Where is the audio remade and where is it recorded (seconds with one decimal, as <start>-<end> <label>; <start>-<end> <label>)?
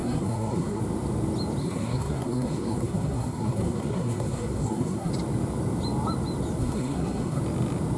0.0-0.8 remade; 0.8-1.6 recorded; 1.6-5.1 remade; 5.1-6.6 recorded; 6.6-7.4 remade; 7.4-8.0 recorded